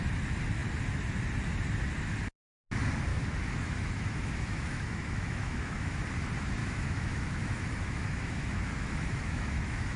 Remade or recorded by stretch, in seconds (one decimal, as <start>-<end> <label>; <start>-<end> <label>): 0.0-3.1 recorded; 3.1-6.0 remade; 6.0-6.6 recorded; 6.6-10.0 remade